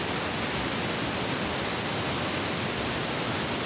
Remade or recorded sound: recorded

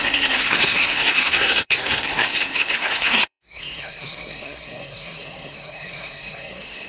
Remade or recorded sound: remade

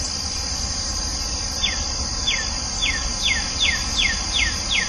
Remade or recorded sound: recorded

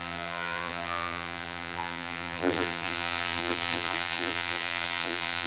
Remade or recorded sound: remade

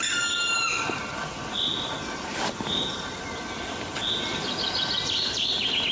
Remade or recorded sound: recorded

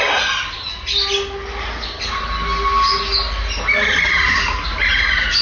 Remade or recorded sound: recorded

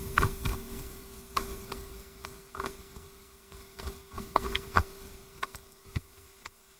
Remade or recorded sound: remade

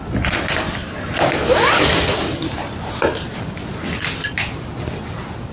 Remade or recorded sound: recorded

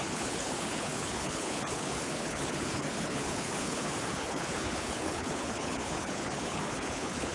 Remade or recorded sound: remade